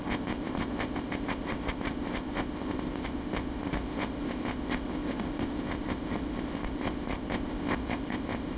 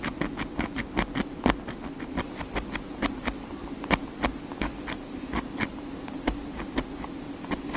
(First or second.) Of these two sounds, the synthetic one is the first